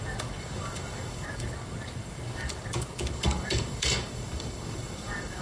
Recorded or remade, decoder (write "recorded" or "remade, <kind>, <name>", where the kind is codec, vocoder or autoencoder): remade, codec, DAC